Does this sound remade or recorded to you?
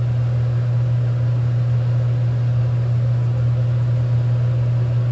recorded